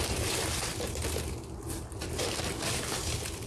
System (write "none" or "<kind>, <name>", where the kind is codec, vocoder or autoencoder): none